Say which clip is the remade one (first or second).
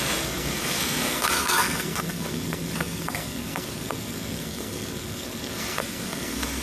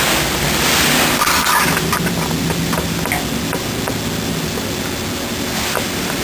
first